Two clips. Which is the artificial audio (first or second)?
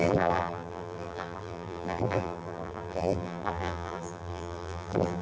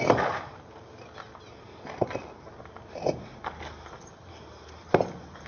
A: first